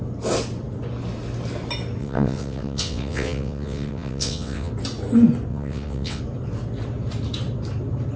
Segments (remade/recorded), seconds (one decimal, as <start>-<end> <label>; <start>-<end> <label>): 0.0-2.0 recorded; 2.0-4.7 remade; 4.7-5.5 recorded; 5.5-6.2 remade; 6.2-8.2 recorded